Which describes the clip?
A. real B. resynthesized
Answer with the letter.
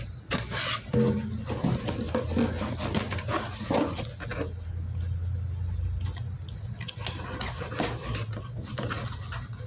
A